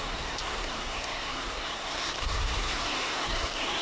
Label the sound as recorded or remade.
remade